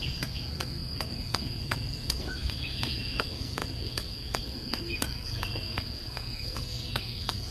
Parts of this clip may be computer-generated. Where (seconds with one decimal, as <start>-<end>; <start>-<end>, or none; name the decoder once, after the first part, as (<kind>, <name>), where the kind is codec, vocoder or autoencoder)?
0.0-7.5 (codec, SNAC)